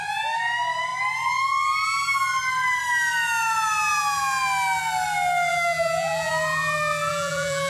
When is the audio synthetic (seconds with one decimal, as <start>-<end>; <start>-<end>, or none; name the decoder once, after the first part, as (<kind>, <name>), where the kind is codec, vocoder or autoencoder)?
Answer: 5.5-6.3 (vocoder, BigVGAN v2); 7.1-7.7